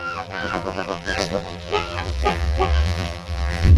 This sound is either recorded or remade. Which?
remade